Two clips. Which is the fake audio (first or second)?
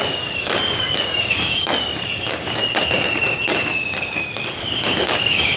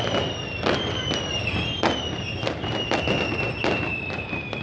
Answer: first